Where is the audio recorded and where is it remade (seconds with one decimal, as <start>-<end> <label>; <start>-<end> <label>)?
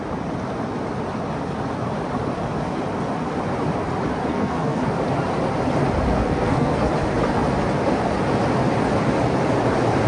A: 0.0-4.3 recorded; 4.3-4.8 remade; 4.8-6.1 recorded; 6.1-6.9 remade; 6.9-10.1 recorded